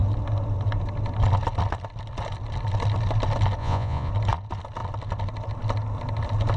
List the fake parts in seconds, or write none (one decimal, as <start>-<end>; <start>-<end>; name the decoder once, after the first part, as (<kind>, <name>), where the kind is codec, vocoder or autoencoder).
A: 3.6-4.1 (vocoder, Vocos)